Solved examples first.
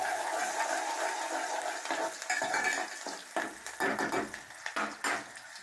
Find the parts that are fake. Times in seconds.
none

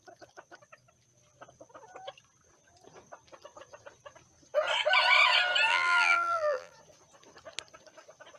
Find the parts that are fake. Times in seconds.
5.7-6.7

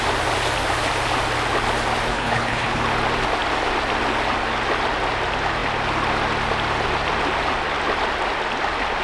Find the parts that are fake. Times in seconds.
2.1-2.8